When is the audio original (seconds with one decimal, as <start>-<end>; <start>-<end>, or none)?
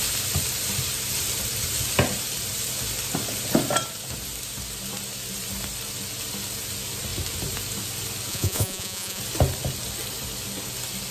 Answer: 0.0-8.3; 9.2-11.1